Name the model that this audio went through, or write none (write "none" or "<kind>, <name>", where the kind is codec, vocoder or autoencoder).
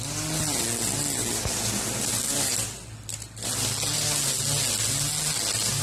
none